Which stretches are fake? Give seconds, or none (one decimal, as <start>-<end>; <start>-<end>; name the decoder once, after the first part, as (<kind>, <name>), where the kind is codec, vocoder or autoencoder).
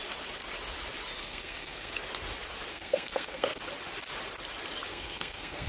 1.2-1.9 (codec, SNAC); 2.7-3.6; 4.9-5.7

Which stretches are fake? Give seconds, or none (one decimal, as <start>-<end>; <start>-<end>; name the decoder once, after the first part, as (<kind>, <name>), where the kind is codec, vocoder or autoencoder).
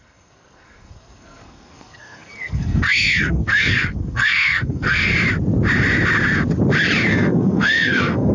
0.0-5.1 (codec, SNAC); 7.1-8.3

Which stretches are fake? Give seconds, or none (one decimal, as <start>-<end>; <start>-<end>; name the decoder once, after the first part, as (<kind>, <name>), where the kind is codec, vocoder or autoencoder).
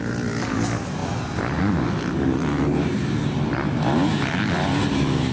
none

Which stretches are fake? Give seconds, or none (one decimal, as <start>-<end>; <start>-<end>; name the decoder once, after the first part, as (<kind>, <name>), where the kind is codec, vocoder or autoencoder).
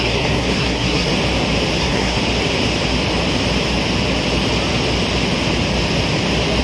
0.0-1.1 (codec, SNAC); 1.8-2.2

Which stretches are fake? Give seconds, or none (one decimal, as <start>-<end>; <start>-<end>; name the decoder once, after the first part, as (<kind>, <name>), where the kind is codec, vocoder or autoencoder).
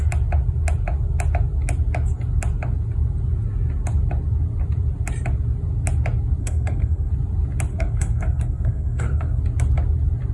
6.4-7.1 (codec, SNAC); 7.7-9.4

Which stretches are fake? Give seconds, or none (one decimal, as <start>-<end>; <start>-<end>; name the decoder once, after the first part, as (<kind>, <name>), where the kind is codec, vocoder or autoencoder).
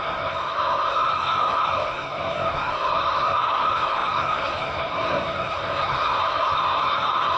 0.0-7.4 (codec, SNAC)